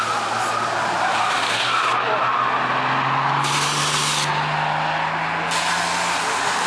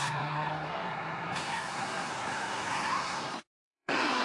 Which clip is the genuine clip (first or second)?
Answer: first